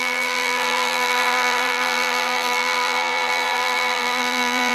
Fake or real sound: fake